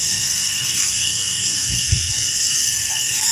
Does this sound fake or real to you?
fake